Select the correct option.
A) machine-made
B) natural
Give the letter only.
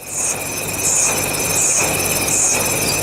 B